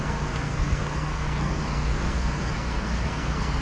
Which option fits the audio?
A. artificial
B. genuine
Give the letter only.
A